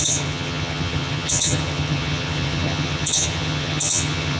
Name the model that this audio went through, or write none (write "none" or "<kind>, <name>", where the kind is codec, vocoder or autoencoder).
vocoder, HiFi-GAN